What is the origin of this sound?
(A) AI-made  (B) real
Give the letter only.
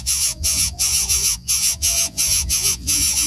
A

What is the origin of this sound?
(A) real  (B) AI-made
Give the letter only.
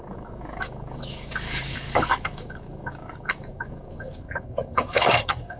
B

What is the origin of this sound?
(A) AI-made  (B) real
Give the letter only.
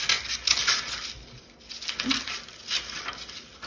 B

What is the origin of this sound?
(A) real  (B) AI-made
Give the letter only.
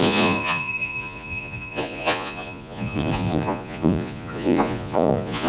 B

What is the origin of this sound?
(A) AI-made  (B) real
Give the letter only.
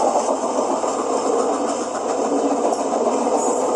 B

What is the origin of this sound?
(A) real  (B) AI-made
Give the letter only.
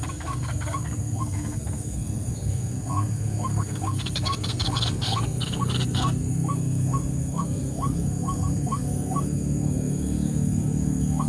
B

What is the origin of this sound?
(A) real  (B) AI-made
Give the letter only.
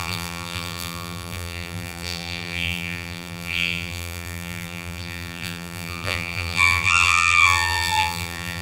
B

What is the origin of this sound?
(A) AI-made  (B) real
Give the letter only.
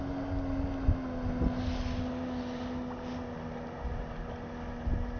B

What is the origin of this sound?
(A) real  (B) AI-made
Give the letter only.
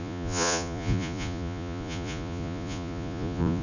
B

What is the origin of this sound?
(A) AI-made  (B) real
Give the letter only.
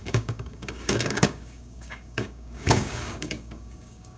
A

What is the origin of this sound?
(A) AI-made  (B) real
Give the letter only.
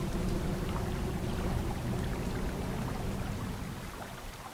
B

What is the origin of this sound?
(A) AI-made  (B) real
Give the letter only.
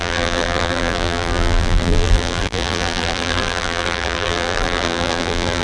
A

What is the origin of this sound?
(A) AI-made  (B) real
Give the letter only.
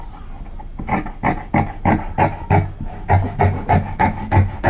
B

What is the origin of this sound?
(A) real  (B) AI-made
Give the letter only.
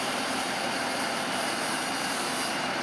B